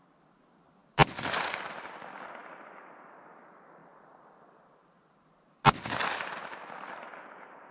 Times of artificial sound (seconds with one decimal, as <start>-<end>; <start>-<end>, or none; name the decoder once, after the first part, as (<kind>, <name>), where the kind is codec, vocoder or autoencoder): 0.8-1.8 (vocoder, BigVGAN v2); 3.8-7.2